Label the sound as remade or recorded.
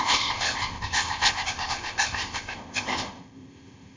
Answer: remade